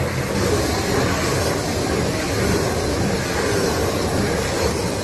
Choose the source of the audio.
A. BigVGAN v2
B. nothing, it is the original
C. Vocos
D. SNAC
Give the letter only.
B